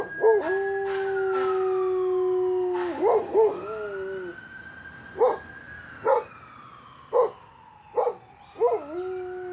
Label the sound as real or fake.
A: real